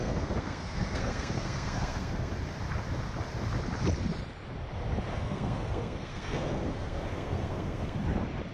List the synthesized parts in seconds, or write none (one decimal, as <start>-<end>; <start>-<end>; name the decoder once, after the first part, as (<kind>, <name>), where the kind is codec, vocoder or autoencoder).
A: 0.0-2.3 (codec, SNAC); 5.1-8.0